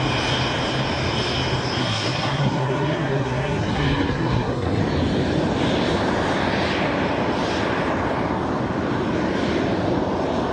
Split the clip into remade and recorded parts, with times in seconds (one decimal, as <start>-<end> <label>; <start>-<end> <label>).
0.0-1.8 recorded; 1.8-4.8 remade; 4.8-10.5 recorded